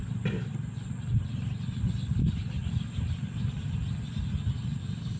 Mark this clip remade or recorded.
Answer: recorded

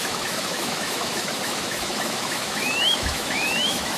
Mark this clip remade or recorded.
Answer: remade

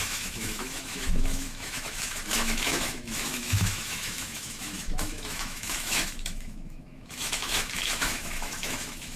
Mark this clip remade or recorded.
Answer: remade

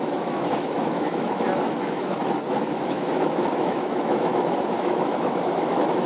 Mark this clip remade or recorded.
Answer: remade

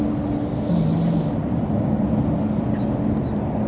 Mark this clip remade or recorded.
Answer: recorded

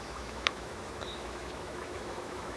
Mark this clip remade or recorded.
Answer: remade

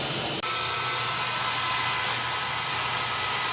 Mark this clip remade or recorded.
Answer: recorded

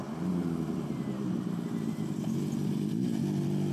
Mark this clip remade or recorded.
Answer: recorded